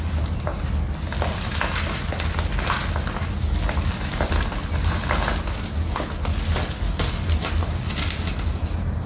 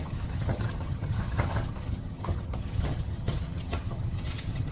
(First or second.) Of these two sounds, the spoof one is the second